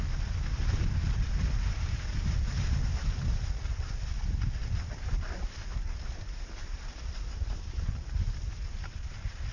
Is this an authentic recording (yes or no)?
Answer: yes